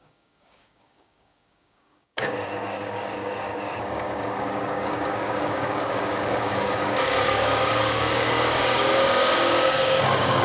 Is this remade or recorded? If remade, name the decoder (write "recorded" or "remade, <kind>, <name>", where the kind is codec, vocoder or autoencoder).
remade, codec, DAC